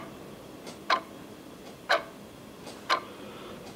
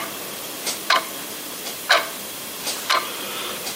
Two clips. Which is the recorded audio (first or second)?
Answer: first